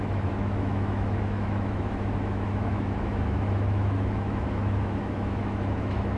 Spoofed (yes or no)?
yes